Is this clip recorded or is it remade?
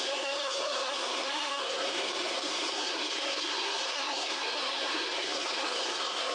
remade